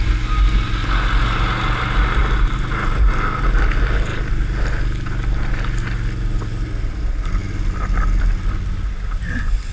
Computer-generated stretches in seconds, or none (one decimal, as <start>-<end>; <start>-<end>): none